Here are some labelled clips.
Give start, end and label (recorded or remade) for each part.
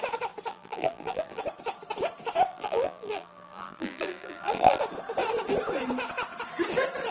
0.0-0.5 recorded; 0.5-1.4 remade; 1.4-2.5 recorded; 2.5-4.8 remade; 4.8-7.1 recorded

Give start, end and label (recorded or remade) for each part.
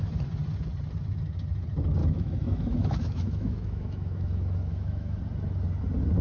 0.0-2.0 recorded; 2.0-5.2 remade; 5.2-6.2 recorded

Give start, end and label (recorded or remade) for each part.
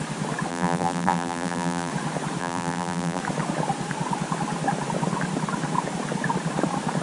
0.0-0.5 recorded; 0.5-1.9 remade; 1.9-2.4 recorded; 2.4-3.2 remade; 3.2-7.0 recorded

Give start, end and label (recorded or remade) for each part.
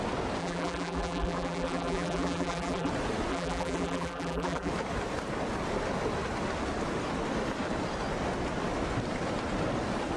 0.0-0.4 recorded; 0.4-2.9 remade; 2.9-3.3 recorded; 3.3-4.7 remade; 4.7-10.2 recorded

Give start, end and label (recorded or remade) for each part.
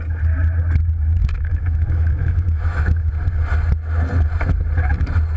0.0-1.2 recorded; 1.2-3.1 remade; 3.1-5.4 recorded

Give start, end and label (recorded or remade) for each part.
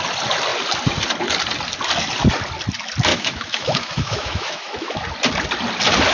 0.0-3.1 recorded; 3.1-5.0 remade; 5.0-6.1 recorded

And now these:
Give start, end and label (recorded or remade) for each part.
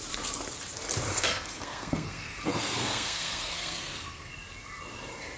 0.0-1.1 recorded; 1.1-4.3 remade; 4.3-5.4 recorded